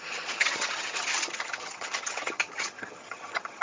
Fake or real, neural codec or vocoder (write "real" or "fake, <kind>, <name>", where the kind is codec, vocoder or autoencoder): fake, vocoder, HiFi-GAN